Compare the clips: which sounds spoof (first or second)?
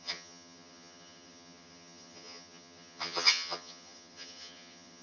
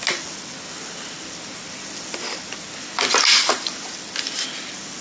first